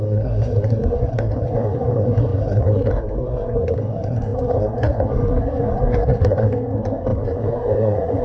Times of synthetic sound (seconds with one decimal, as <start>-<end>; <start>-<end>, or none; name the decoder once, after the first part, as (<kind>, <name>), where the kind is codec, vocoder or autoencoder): 0.0-8.2 (codec, SNAC)